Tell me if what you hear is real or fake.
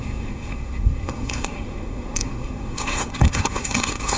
fake